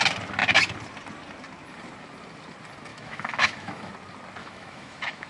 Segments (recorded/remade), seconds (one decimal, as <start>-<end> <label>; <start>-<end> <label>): 0.0-2.9 recorded; 2.9-3.9 remade; 3.9-4.4 recorded; 4.4-5.3 remade